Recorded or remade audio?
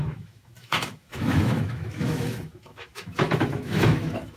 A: remade